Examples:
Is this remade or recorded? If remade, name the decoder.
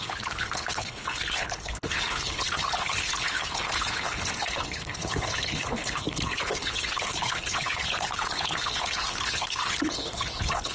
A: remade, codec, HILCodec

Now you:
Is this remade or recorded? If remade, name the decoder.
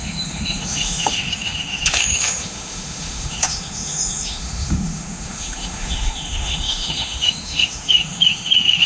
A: remade, autoencoder, DAC-VAE